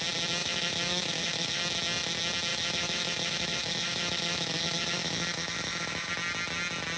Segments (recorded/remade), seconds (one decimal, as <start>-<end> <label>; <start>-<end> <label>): 0.0-0.4 recorded; 0.4-1.6 remade; 1.6-2.5 recorded; 2.5-6.1 remade; 6.1-7.0 recorded